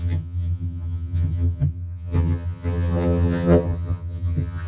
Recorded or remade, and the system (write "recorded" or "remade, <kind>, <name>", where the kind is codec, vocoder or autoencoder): remade, vocoder, HiFi-GAN